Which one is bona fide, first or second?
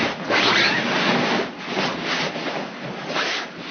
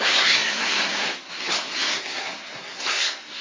first